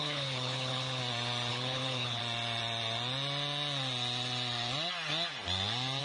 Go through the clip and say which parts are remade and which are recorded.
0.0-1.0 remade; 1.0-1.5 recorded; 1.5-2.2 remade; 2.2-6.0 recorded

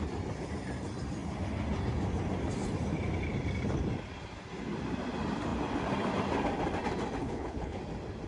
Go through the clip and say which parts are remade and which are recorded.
0.0-7.2 recorded; 7.2-7.8 remade; 7.8-8.3 recorded

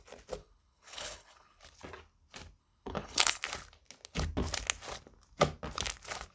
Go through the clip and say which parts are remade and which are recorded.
0.0-0.4 recorded; 0.4-1.6 remade; 1.6-2.6 recorded; 2.6-3.4 remade; 3.4-6.3 recorded

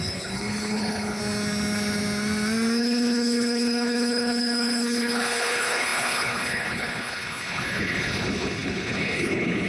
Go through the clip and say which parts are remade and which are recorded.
0.0-1.2 remade; 1.2-2.8 recorded; 2.8-9.7 remade

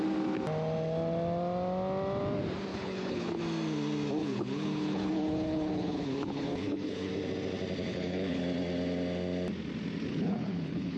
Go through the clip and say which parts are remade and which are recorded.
0.0-2.7 recorded; 2.7-3.4 remade; 3.4-4.2 recorded; 4.2-7.1 remade; 7.1-7.9 recorded; 7.9-8.4 remade; 8.4-10.1 recorded; 10.1-11.0 remade

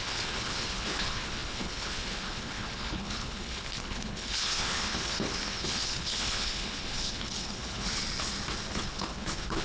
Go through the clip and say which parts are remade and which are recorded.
0.0-8.0 remade; 8.0-8.7 recorded; 8.7-9.6 remade

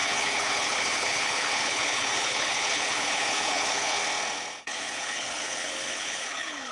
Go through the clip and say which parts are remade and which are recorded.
0.0-4.0 remade; 4.0-4.6 recorded; 4.6-6.7 remade

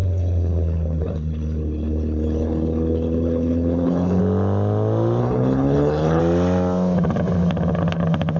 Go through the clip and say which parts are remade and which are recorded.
0.0-4.2 remade; 4.2-5.2 recorded; 5.2-6.2 remade; 6.2-8.4 recorded